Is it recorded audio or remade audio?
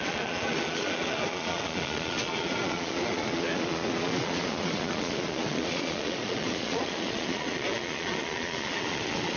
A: remade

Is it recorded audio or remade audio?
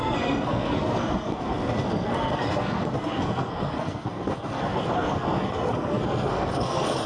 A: remade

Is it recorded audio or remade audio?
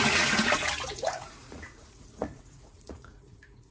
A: remade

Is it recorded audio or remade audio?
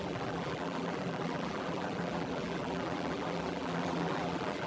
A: remade